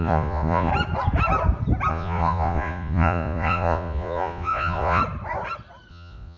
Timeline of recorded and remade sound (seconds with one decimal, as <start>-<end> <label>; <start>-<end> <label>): 0.0-0.7 remade; 0.7-1.9 recorded; 1.9-5.0 remade; 5.0-5.9 recorded; 5.9-6.4 remade